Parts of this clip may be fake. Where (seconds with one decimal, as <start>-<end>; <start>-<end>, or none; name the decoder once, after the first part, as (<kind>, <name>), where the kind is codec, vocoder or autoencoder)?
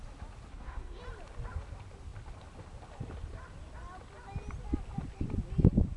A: 0.5-1.0 (codec, SNAC)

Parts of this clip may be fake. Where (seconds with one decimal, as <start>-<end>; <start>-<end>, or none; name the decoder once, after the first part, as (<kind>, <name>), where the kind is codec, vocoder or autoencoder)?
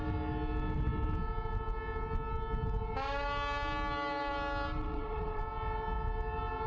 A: 4.8-5.4 (vocoder, WaveNeXt)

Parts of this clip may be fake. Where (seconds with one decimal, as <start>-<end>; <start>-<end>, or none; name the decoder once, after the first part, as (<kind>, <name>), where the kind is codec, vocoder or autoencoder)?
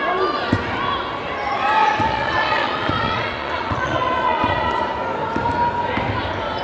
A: 1.8-4.8 (vocoder, Vocos)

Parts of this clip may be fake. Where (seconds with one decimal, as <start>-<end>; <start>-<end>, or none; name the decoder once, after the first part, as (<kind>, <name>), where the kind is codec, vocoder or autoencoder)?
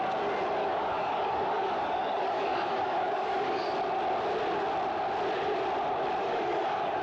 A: 0.6-3.7 (codec, DAC); 6.2-7.0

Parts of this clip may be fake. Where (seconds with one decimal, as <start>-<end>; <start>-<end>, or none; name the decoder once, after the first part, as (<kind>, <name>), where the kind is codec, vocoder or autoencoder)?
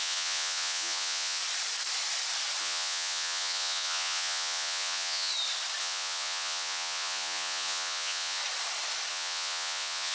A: 0.0-1.4 (vocoder, Vocos); 2.6-5.3; 5.8-8.4; 9.1-10.1